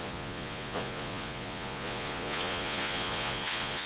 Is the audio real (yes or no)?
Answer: no